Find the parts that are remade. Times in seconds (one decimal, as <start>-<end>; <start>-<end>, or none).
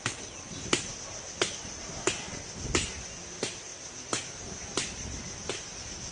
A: none